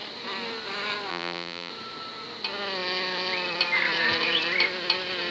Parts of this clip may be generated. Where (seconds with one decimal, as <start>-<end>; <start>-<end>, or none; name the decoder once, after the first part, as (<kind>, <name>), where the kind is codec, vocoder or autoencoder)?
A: 1.1-1.7 (vocoder, BigVGAN v2)